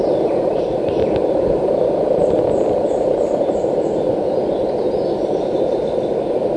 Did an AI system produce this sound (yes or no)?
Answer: no